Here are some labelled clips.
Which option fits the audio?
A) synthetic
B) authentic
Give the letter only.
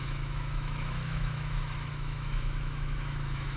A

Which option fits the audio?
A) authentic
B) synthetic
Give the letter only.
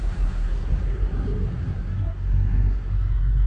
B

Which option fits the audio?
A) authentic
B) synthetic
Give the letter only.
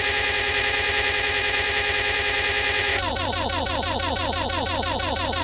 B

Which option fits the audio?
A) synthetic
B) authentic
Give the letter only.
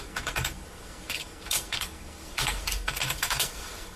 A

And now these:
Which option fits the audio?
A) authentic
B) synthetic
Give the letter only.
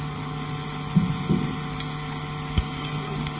A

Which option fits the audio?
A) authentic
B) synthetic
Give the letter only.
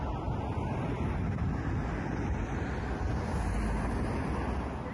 A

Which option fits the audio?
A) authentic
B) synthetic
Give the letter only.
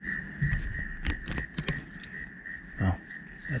A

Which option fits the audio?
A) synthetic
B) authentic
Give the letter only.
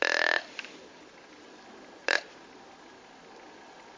B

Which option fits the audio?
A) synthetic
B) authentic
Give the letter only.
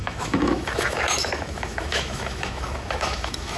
A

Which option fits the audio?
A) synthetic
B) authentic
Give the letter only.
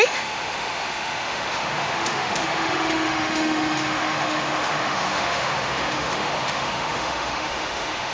A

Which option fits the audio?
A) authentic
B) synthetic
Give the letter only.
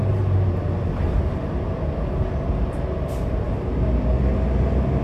A